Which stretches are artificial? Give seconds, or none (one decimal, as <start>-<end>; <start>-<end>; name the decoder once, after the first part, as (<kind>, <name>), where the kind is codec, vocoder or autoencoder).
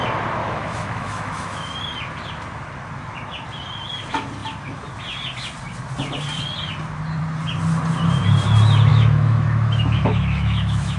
0.4-1.8 (autoencoder, DAC-VAE); 8.9-11.0